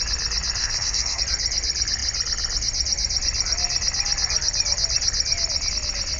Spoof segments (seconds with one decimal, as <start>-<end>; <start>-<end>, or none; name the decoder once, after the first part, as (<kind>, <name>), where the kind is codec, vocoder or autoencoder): 0.6-1.2 (codec, SNAC)

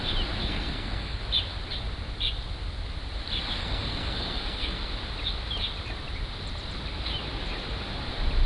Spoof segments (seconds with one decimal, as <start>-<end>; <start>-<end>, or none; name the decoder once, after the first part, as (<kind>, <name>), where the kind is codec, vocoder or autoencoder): 0.4-1.2 (codec, SNAC); 3.6-4.9

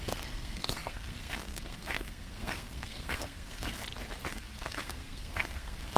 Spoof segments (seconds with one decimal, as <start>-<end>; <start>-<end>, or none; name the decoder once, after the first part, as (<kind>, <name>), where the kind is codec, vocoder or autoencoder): 0.0-3.8 (codec, SNAC); 4.3-6.0

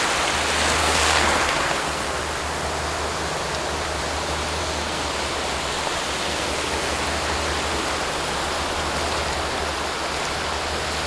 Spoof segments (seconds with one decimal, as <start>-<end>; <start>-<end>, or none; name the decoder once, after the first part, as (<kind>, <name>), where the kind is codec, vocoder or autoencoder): 0.8-2.2 (codec, SNAC); 4.6-5.2; 6.2-7.0

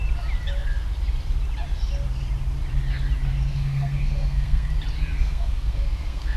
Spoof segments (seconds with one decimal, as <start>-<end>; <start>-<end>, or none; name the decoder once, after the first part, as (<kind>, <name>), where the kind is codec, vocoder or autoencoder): 3.3-4.7 (codec, SNAC); 5.2-6.4

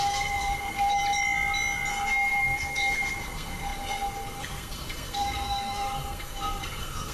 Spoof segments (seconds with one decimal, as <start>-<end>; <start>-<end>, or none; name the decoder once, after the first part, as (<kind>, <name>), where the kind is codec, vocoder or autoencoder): 0.0-1.0 (codec, SNAC); 1.9-7.1

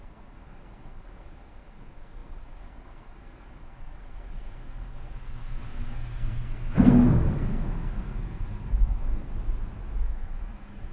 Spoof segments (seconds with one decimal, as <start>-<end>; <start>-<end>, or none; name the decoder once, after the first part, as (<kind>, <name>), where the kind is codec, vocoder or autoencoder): 0.0-9.3 (codec, SNAC); 10.0-10.9